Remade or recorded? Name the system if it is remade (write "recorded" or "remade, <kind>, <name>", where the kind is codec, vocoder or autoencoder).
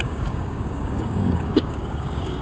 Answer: remade, codec, DAC